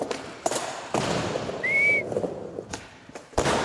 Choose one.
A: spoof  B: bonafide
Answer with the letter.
B